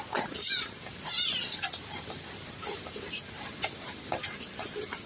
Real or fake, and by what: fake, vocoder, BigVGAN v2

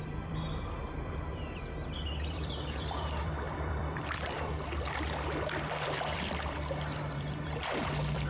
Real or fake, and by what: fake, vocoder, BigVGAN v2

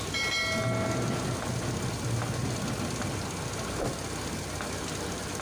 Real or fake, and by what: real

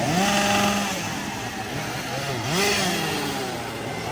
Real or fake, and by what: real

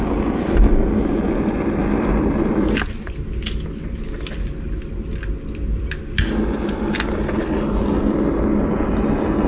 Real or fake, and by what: real